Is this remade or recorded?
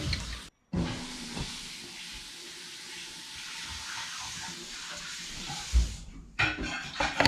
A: recorded